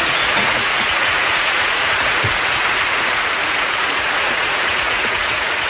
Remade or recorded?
remade